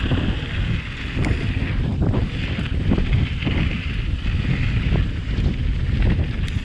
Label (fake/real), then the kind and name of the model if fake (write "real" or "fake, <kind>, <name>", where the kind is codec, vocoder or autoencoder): real